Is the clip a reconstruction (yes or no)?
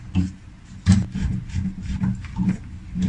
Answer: no